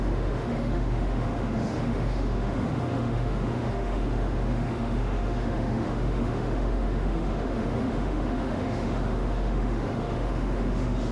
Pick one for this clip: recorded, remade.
remade